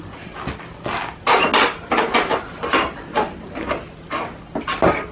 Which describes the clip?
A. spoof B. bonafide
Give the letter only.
B